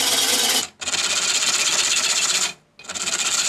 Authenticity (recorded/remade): recorded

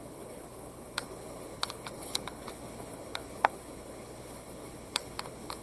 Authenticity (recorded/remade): remade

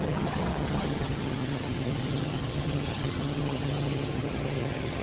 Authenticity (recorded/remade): remade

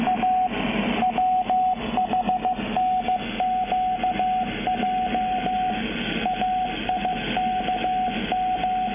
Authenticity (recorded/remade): recorded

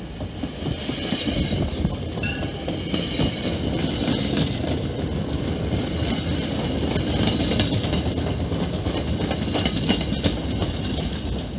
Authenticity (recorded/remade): recorded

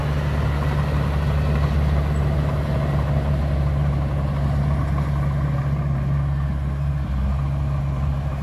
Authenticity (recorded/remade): recorded